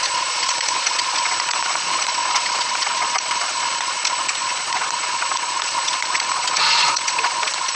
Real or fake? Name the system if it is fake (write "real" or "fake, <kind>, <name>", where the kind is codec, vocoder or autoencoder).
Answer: fake, vocoder, Vocos